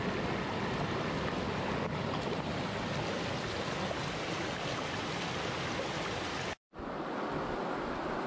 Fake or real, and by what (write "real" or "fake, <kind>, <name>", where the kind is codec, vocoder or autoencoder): real